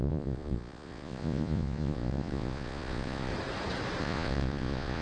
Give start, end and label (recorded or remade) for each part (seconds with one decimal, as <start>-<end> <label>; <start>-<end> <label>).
0.0-3.3 remade; 3.3-4.0 recorded; 4.0-5.0 remade